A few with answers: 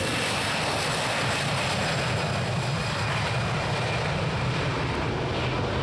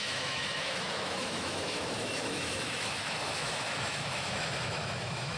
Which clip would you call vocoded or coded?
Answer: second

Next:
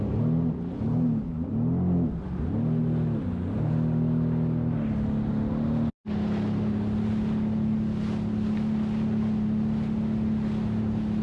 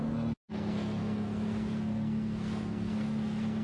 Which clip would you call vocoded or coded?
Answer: second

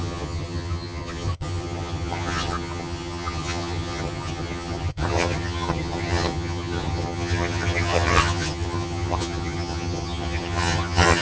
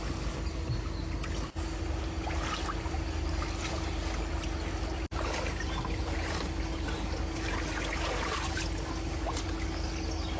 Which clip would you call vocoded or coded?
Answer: first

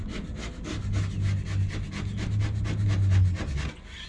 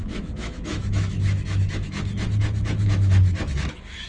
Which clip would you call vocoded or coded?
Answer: second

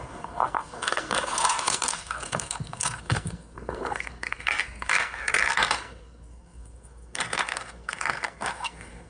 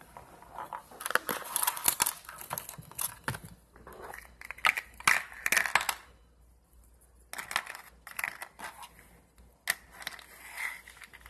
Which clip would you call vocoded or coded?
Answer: first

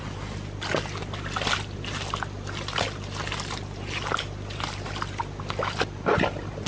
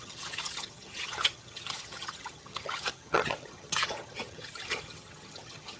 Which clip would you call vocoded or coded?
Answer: second